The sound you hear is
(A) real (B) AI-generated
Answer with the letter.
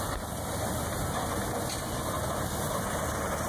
A